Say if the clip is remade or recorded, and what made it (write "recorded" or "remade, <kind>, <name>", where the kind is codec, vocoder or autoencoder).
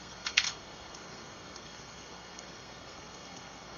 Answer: remade, codec, SNAC